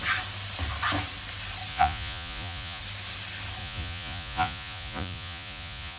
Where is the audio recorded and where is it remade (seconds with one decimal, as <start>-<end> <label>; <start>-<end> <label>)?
0.0-1.7 recorded; 1.7-2.8 remade; 2.8-3.6 recorded; 3.6-6.0 remade